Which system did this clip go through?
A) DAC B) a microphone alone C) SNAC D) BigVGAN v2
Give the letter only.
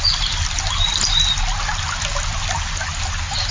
B